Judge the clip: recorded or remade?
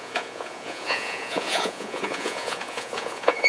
remade